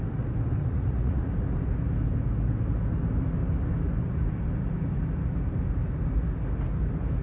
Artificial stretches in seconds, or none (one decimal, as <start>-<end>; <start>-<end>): 0.6-1.3